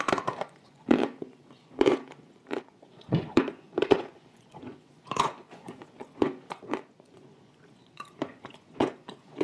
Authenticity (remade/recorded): remade